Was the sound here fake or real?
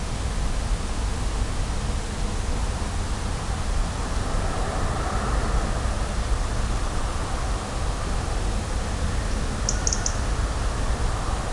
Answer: real